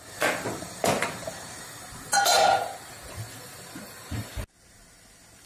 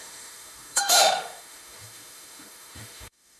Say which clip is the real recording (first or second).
first